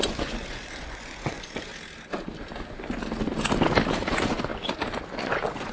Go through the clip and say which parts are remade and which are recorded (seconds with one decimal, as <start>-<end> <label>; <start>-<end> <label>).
0.0-1.7 remade; 1.7-4.1 recorded; 4.1-4.5 remade; 4.5-5.2 recorded; 5.2-5.7 remade